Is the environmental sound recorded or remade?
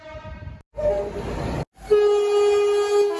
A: recorded